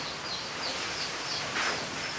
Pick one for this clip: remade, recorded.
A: recorded